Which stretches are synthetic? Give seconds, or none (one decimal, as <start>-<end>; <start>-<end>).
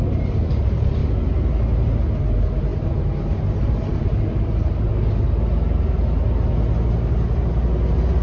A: 0.0-1.0; 2.2-4.9